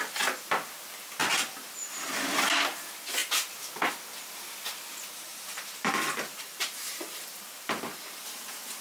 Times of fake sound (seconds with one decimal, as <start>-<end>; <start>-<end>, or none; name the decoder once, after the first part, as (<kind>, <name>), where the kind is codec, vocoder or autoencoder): 1.2-2.1 (vocoder, BigVGAN v2); 5.3-8.8